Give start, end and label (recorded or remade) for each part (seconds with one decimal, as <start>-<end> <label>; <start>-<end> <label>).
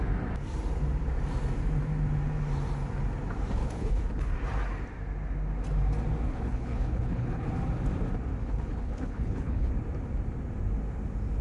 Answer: 0.0-3.6 recorded; 3.6-4.3 remade; 4.3-6.3 recorded; 6.3-7.5 remade; 7.5-8.4 recorded; 8.4-9.7 remade; 9.7-11.4 recorded